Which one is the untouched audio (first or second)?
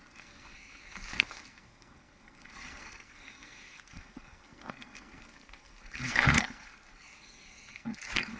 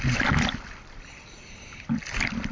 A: second